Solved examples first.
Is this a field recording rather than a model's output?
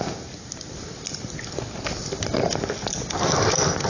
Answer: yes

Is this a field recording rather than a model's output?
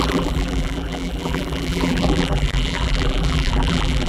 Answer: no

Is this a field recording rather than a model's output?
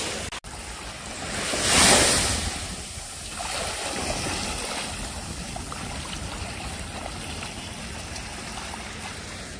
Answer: yes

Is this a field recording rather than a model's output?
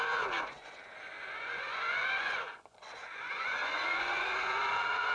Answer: no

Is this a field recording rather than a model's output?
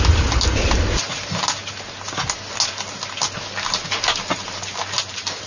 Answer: yes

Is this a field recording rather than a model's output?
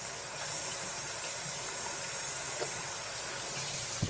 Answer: yes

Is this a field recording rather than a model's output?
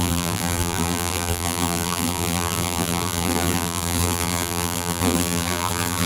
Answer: no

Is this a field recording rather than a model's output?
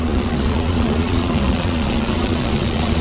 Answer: no